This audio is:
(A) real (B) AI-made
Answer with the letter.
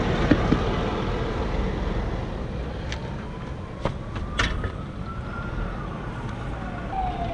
A